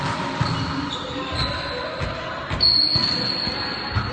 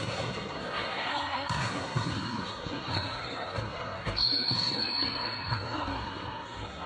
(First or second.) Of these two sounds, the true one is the first